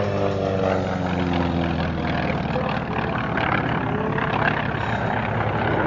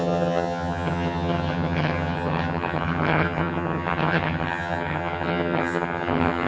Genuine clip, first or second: first